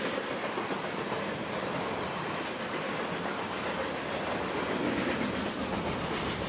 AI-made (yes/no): yes